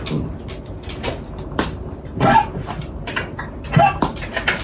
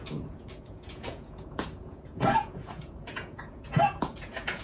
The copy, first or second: second